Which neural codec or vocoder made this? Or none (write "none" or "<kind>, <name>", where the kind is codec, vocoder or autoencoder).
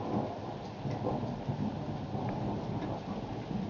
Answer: none